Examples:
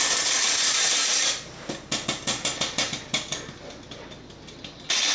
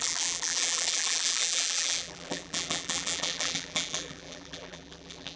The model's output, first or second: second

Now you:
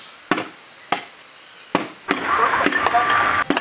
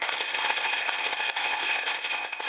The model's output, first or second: second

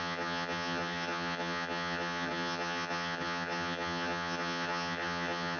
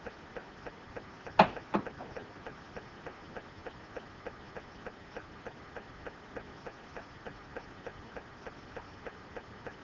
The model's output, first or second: first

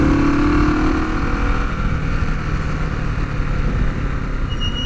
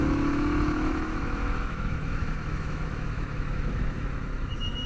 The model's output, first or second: second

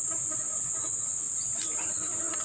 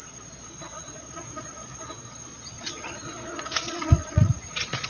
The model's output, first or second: second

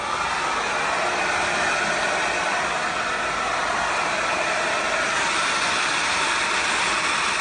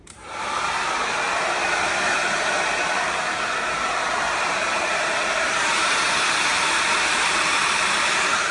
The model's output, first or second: second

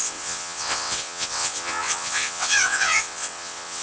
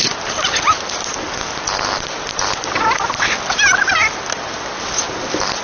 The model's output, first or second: first